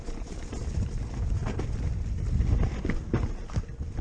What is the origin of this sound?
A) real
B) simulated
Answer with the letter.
A